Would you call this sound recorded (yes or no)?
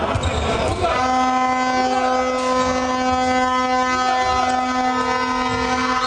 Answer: yes